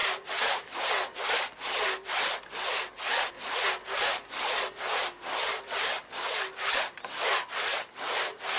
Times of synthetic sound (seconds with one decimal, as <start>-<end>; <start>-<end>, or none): none